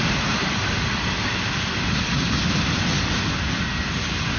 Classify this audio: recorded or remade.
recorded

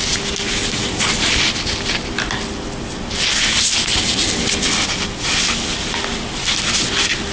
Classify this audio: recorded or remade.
recorded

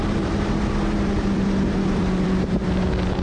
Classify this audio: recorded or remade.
remade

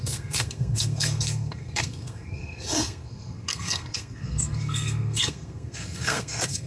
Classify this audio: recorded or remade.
remade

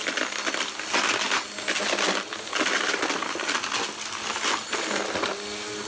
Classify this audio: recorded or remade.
recorded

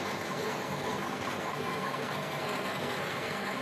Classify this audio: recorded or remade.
remade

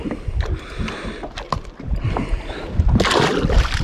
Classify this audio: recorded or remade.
recorded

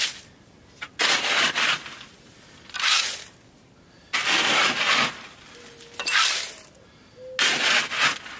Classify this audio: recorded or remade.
recorded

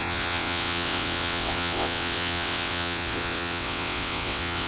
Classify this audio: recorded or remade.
remade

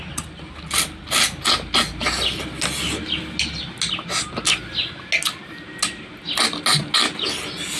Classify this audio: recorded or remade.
recorded